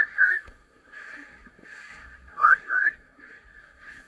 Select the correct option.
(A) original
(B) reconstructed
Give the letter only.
B